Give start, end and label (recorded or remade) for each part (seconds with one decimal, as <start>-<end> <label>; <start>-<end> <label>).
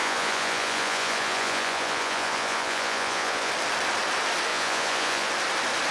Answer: 0.0-3.5 remade; 3.5-4.5 recorded; 4.5-5.3 remade; 5.3-5.9 recorded